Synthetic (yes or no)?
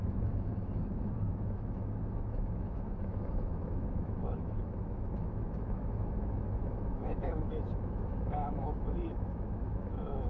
yes